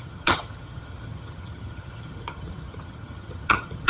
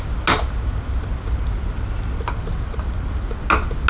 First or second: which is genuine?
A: second